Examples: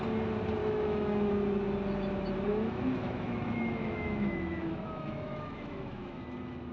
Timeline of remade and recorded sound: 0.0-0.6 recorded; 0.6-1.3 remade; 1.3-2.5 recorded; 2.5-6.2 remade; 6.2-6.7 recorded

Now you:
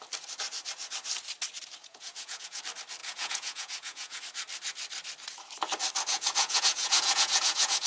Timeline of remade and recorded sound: 0.0-1.8 recorded; 1.8-2.6 remade; 2.6-3.0 recorded; 3.0-4.2 remade; 4.2-6.1 recorded; 6.1-7.9 remade